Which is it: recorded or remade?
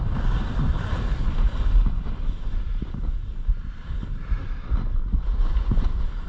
recorded